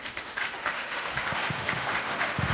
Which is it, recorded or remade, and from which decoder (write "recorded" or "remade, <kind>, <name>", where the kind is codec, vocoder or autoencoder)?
remade, autoencoder, DAC-VAE